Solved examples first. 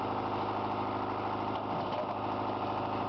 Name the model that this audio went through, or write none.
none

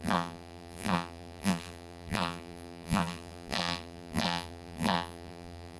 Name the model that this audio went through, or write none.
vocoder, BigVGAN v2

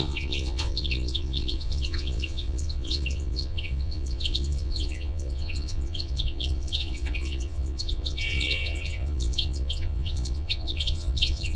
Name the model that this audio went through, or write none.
vocoder, Vocos